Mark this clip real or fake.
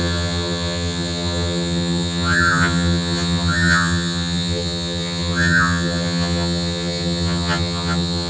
fake